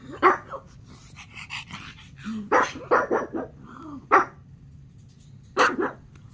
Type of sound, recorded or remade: recorded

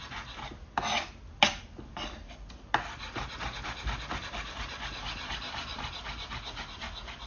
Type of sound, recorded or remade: recorded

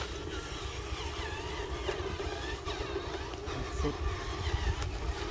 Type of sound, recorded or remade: recorded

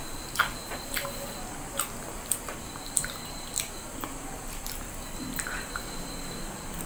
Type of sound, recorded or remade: remade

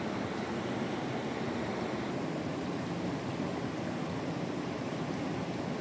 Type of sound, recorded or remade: recorded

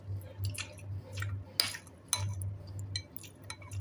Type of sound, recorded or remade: recorded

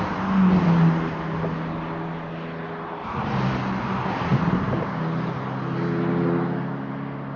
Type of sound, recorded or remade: recorded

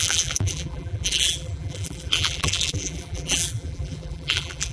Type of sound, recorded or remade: remade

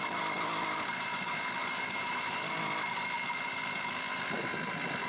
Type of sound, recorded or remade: remade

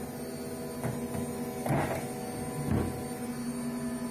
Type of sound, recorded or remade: recorded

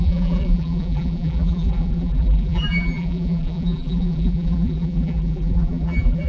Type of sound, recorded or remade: remade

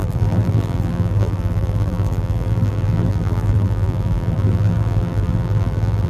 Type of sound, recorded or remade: remade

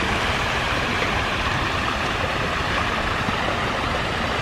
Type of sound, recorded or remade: remade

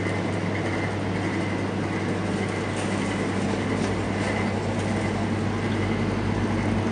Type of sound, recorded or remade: recorded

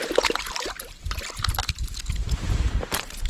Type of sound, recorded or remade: remade